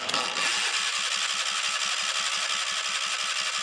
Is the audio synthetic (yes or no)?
no